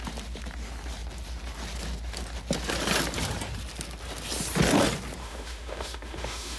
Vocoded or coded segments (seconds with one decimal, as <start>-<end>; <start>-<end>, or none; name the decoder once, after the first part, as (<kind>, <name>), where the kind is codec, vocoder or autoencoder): 5.2-6.6 (autoencoder, DAC-VAE)